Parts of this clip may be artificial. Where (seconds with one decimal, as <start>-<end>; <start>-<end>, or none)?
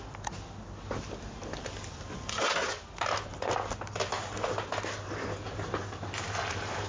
none